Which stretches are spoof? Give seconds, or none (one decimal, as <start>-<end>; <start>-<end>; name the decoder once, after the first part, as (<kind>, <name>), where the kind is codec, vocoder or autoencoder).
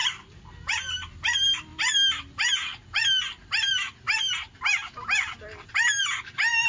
none